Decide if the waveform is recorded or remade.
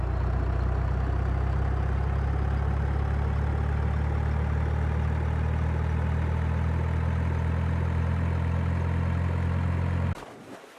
recorded